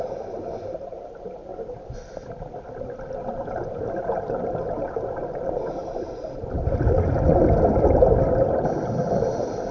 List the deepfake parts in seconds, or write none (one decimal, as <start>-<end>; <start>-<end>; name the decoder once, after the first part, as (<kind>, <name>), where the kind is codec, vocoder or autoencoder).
none